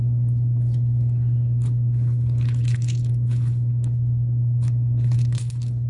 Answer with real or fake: fake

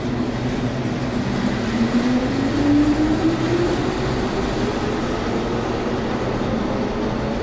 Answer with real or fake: real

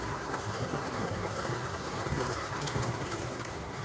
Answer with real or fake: fake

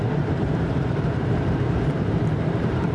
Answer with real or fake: fake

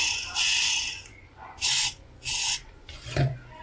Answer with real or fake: fake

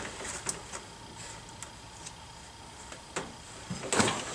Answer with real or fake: real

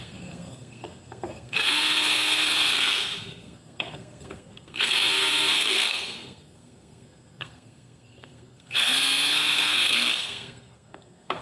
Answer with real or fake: fake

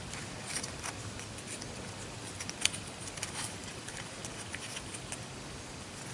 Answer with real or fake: real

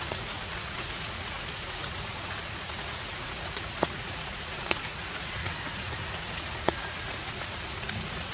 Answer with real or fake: fake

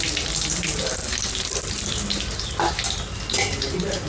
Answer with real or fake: real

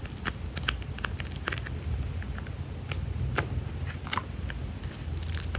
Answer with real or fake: real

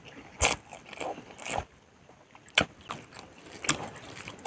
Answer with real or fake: real